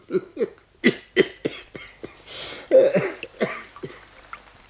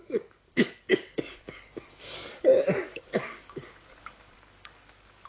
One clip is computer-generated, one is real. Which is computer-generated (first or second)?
second